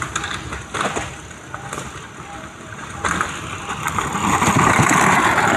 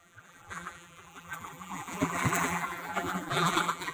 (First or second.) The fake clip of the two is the second